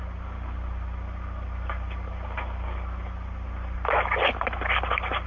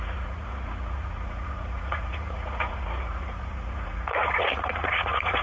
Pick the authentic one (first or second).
first